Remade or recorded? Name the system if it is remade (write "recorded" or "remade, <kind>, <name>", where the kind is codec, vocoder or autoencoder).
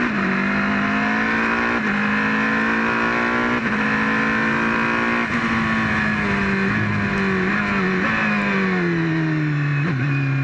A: recorded